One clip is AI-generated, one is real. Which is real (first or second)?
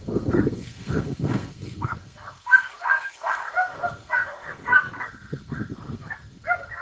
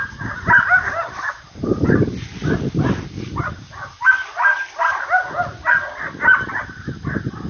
second